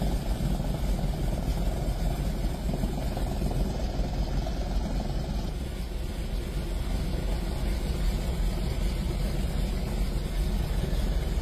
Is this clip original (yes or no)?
yes